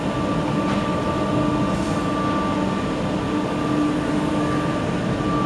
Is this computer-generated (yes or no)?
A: no